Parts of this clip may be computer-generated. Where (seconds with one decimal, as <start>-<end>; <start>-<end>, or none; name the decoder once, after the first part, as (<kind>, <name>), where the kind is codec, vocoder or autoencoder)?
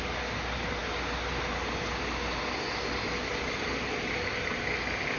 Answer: none